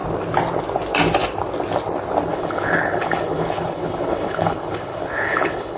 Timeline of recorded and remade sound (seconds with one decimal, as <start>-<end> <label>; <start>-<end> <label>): 0.0-2.3 recorded; 2.3-5.8 remade